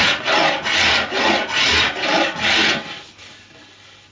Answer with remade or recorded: recorded